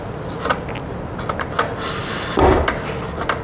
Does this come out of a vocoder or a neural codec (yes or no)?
no